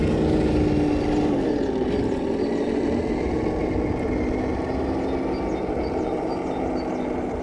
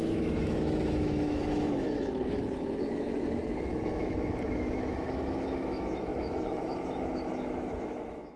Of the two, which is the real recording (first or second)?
first